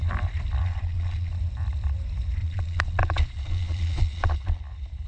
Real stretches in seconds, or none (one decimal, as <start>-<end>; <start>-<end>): 0.0-0.6; 1.3-2.4; 4.6-5.1